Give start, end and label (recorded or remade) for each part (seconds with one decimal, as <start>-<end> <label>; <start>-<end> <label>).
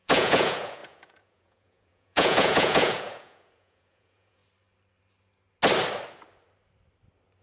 0.0-4.4 remade; 4.4-7.4 recorded